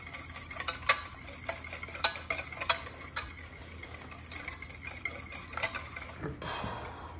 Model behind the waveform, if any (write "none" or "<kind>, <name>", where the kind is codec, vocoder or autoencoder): none